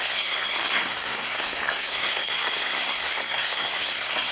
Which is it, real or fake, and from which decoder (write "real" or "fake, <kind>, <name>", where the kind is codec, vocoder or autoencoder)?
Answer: fake, codec, SNAC